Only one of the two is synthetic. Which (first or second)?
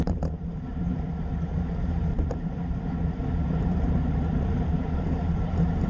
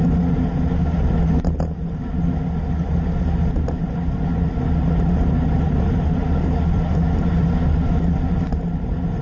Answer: first